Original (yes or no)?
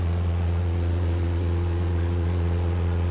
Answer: no